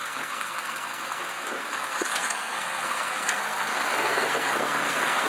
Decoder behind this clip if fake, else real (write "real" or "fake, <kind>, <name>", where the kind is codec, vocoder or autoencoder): fake, codec, SNAC